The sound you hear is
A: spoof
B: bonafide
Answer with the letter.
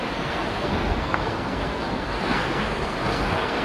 A